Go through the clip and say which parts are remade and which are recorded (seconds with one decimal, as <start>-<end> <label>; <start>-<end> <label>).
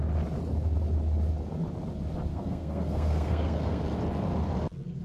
0.0-2.3 recorded; 2.3-3.8 remade; 3.8-5.0 recorded